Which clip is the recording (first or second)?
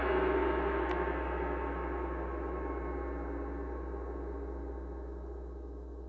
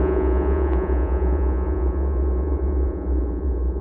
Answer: first